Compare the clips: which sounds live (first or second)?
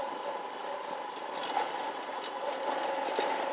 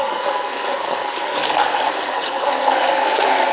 first